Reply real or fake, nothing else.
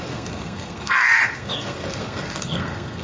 fake